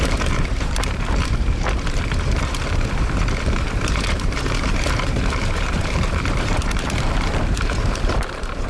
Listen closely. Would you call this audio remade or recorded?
remade